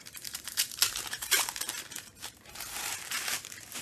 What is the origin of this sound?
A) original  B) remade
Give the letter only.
B